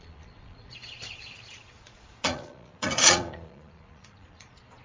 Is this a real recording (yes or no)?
no